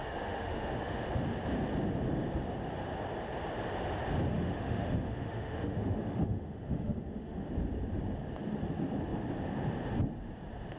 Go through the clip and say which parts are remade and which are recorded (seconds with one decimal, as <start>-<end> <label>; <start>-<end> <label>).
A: 0.0-1.0 remade; 1.0-4.3 recorded; 4.3-7.5 remade; 7.5-10.8 recorded